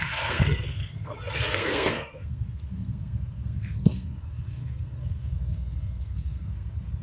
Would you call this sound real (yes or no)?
no